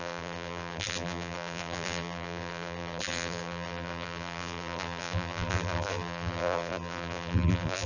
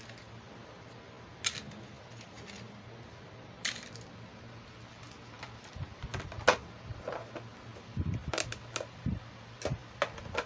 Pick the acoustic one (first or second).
second